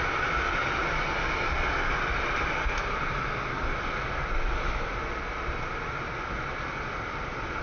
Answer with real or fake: real